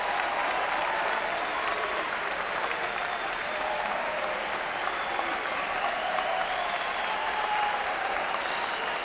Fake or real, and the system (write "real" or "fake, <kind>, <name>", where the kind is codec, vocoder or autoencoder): fake, vocoder, BigVGAN v2